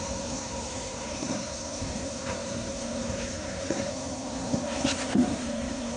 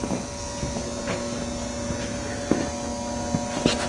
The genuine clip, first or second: second